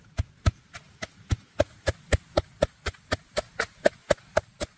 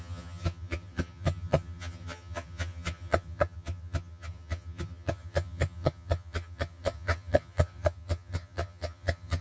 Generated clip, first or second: second